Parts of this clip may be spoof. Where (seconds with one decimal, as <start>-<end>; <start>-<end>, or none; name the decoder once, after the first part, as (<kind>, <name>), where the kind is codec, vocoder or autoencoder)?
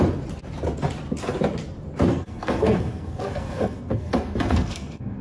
2.1-5.2 (codec, SNAC)